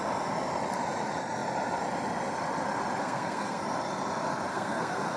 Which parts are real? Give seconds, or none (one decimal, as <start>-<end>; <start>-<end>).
0.0-3.0; 3.6-4.5